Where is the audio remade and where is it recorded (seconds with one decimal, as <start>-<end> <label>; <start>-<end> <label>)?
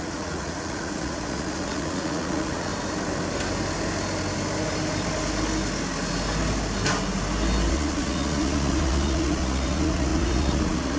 0.0-2.7 remade; 2.7-7.7 recorded; 7.7-11.0 remade